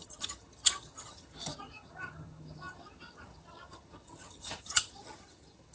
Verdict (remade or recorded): remade